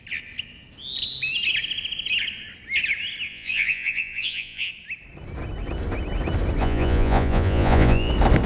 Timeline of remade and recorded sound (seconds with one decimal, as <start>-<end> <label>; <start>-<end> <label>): 0.0-3.3 recorded; 3.3-4.7 remade; 4.7-6.6 recorded; 6.6-8.1 remade; 8.1-8.5 recorded